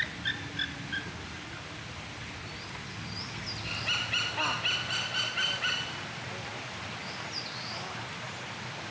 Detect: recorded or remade recorded